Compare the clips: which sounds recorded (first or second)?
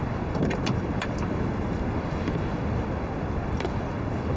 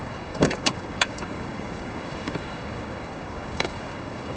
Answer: first